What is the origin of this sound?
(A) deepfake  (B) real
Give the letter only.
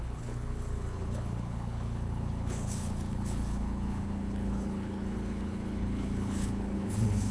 A